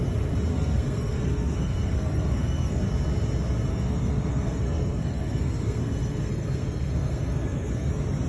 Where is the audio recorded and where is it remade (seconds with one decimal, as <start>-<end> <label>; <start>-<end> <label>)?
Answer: 0.0-0.5 recorded; 0.5-2.8 remade; 2.8-3.7 recorded; 3.7-7.9 remade; 7.9-8.3 recorded